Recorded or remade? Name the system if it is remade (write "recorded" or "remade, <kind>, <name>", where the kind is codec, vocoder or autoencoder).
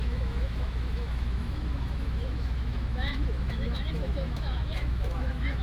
remade, autoencoder, DAC-VAE